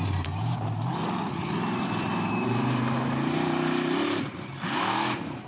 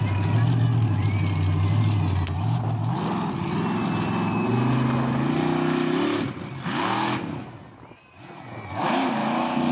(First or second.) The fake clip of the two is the first